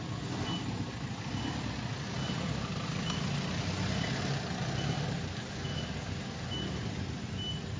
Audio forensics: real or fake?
real